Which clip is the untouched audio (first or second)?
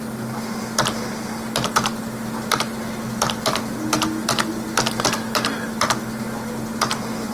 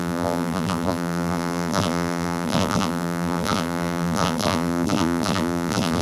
first